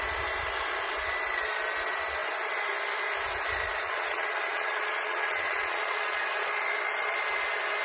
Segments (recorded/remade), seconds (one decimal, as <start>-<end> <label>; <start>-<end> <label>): 0.0-3.8 recorded; 3.8-6.2 remade; 6.2-7.8 recorded